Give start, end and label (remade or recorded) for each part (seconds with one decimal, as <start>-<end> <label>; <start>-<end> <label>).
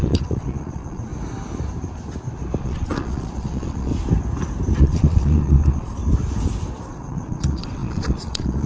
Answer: 0.0-1.1 remade; 1.1-2.6 recorded; 2.6-3.9 remade; 3.9-4.8 recorded; 4.8-6.0 remade; 6.0-6.9 recorded; 6.9-8.7 remade